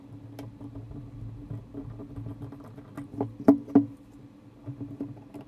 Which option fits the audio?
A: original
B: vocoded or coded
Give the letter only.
A